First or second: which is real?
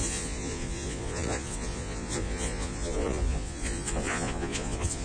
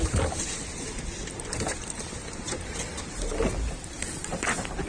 second